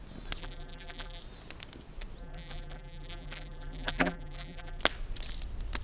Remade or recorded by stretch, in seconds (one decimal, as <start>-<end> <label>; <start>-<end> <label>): 0.0-0.4 recorded; 0.4-1.2 remade; 1.2-2.2 recorded; 2.2-4.8 remade; 4.8-5.8 recorded